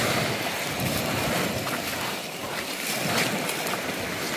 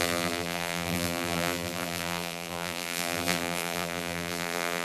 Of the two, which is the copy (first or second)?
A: second